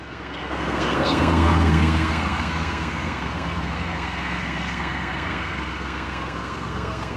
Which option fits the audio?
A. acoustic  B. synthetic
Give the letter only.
B